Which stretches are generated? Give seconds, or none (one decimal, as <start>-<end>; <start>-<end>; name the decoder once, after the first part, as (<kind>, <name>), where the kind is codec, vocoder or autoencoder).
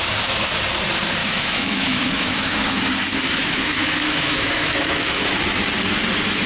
1.2-2.8 (autoencoder, DAC-VAE); 3.4-5.2